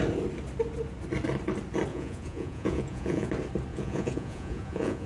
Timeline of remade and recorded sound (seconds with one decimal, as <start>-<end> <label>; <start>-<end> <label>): 0.0-1.9 recorded; 1.9-3.3 remade; 3.3-3.7 recorded; 3.7-5.1 remade